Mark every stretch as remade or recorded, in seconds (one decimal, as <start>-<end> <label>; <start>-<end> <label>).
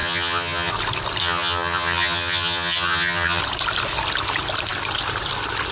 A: 0.0-0.7 remade; 0.7-1.2 recorded; 1.2-3.4 remade; 3.4-5.7 recorded